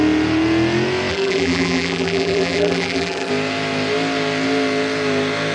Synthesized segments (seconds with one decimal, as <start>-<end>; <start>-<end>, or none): 1.1-3.3